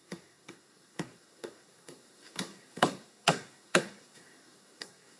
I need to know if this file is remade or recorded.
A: remade